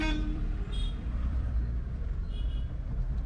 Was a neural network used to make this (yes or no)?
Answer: yes